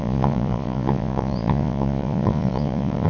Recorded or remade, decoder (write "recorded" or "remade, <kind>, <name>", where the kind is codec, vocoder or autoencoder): remade, vocoder, Vocos